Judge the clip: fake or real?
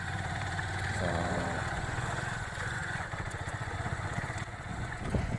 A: fake